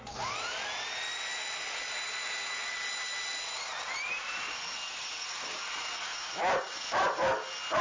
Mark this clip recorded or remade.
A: remade